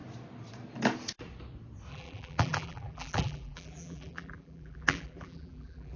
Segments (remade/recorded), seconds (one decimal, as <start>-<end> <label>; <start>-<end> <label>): 0.0-1.9 recorded; 1.9-6.0 remade

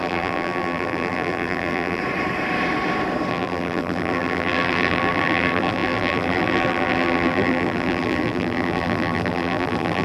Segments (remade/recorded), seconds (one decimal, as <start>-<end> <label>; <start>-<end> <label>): 0.0-2.0 remade; 2.0-3.3 recorded; 3.3-10.0 remade

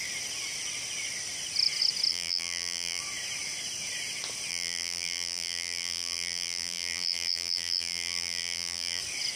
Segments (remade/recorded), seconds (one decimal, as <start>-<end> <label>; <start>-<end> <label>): 0.0-2.1 recorded; 2.1-3.0 remade; 3.0-4.5 recorded; 4.5-9.0 remade; 9.0-9.4 recorded

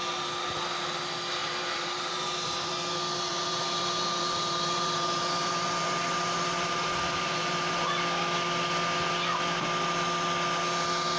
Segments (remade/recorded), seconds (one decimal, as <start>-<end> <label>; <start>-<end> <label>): 0.0-1.4 recorded; 1.4-2.7 remade; 2.7-3.3 recorded; 3.3-7.9 remade; 7.9-11.2 recorded

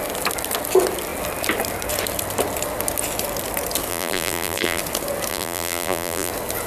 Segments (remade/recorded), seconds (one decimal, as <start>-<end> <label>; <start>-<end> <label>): 0.0-3.9 recorded; 3.9-4.8 remade; 4.8-5.3 recorded; 5.3-6.3 remade; 6.3-6.7 recorded